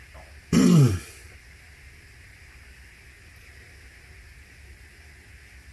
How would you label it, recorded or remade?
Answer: recorded